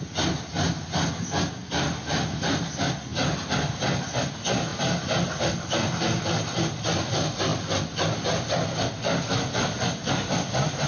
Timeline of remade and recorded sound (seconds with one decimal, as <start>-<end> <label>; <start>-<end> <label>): 0.0-10.9 recorded